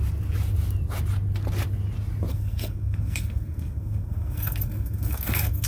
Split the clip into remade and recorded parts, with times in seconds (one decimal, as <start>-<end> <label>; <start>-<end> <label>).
0.0-2.3 recorded; 2.3-5.7 remade